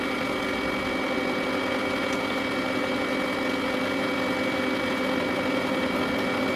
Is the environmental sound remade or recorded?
recorded